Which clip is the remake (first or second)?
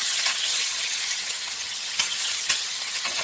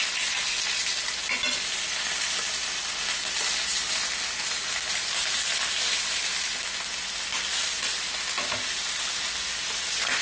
first